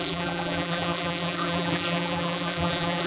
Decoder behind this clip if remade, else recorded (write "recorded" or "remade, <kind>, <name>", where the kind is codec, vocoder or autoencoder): remade, vocoder, BigVGAN v2